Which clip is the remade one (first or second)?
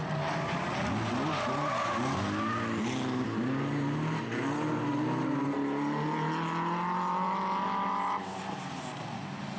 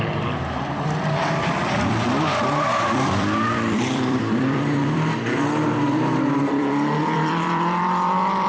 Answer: second